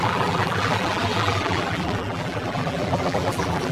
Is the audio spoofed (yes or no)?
yes